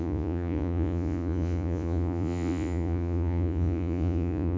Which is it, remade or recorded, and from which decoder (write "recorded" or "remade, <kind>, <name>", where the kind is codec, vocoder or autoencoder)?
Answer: remade, vocoder, Vocos